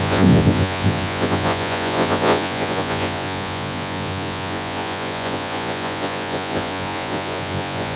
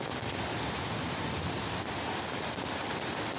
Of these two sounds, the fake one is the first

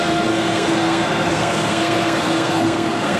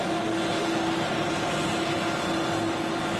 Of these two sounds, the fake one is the first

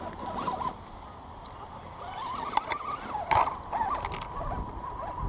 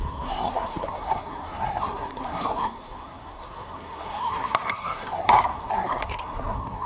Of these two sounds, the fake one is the second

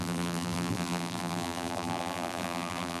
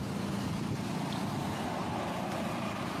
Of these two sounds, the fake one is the first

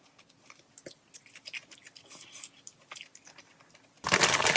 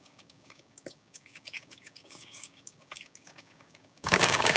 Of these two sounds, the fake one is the second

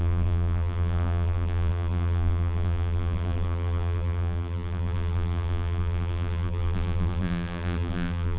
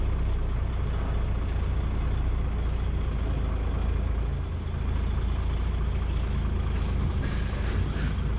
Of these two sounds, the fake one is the first